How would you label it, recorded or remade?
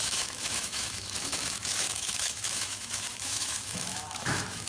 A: remade